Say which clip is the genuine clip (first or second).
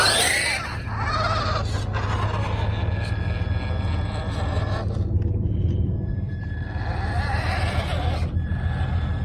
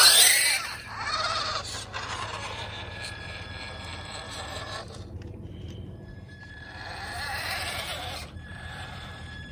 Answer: first